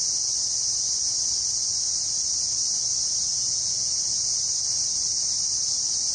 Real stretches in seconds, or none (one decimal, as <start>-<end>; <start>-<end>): 0.0-3.3; 3.9-6.1